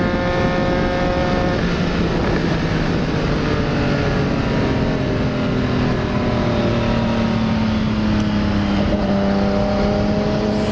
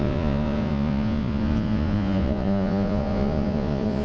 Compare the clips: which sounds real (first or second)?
first